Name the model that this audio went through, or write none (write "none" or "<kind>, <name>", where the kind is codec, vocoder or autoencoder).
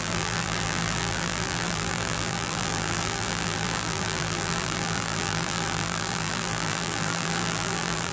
vocoder, BigVGAN v2